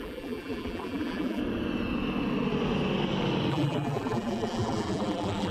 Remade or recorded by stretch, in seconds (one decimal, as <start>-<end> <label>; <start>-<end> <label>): 0.0-1.4 remade; 1.4-3.5 recorded; 3.5-5.5 remade